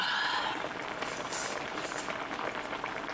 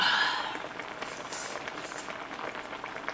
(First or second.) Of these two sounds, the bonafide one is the second